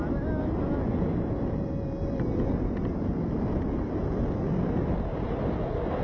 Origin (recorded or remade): recorded